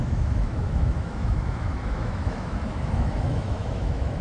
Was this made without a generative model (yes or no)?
no